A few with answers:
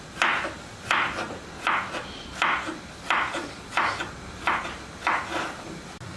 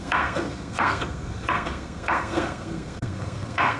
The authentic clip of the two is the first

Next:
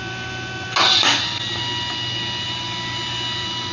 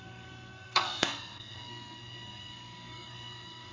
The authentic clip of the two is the first